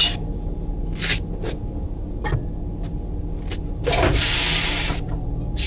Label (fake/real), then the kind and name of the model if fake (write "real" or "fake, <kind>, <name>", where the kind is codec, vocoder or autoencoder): real